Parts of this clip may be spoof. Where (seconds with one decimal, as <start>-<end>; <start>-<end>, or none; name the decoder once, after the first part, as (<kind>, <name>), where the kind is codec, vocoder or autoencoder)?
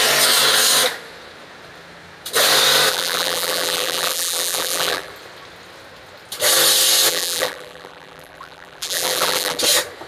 2.9-5.1 (vocoder, BigVGAN v2); 7.1-9.6